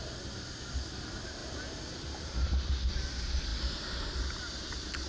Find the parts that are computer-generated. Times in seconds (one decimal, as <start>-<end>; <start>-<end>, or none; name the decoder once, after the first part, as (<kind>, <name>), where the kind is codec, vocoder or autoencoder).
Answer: none